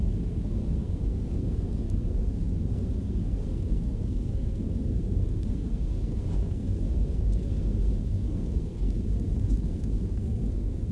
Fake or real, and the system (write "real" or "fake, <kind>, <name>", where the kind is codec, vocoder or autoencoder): fake, codec, SNAC